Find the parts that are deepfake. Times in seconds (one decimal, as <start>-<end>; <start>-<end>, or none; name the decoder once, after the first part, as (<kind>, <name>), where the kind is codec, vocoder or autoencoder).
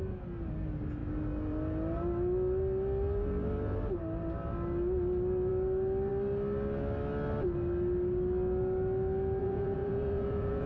9.4-10.7 (vocoder, Vocos)